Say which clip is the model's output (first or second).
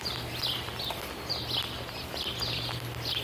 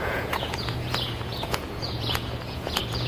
second